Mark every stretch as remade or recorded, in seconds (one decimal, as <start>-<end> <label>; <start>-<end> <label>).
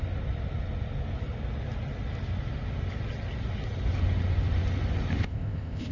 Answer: 0.0-5.2 recorded; 5.2-5.9 remade